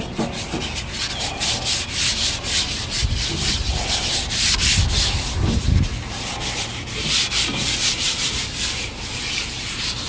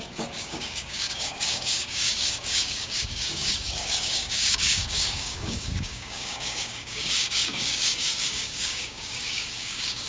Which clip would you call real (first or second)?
first